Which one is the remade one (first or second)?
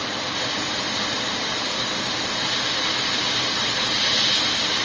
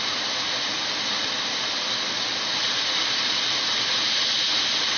second